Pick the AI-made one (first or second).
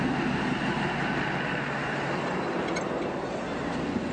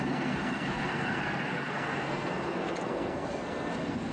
second